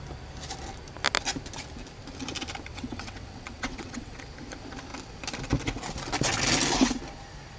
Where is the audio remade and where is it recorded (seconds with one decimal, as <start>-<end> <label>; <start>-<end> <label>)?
0.0-2.7 recorded; 2.7-4.2 remade; 4.2-7.6 recorded